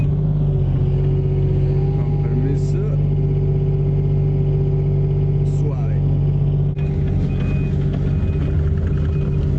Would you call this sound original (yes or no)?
yes